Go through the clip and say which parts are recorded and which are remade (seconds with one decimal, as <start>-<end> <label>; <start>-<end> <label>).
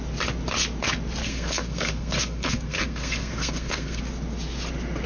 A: 0.0-1.2 recorded; 1.2-4.0 remade; 4.0-5.1 recorded